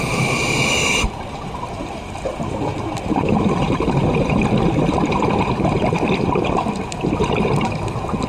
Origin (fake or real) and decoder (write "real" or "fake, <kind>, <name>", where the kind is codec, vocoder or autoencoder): real